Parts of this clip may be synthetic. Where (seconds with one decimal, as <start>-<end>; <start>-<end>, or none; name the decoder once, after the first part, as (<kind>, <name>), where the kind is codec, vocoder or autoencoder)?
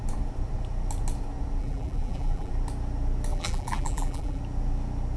1.6-2.5 (vocoder, BigVGAN v2); 3.3-4.4